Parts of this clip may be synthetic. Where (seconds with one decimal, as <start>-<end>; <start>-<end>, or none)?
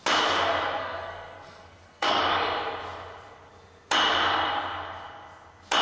0.8-2.2